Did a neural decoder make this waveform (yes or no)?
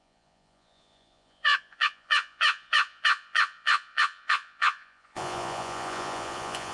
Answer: yes